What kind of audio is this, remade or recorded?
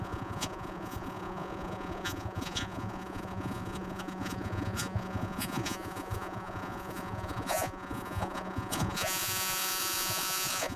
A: remade